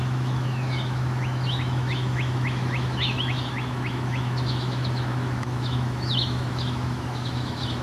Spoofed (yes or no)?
yes